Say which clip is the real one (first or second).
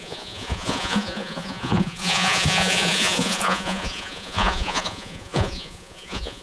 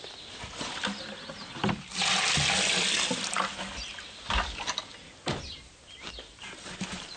second